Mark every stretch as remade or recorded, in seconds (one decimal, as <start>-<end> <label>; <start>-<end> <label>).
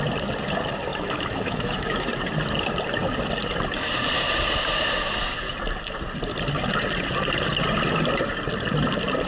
0.0-0.9 recorded; 0.9-2.1 remade; 2.1-9.3 recorded